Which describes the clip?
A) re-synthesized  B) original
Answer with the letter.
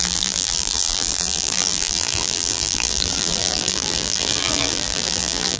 A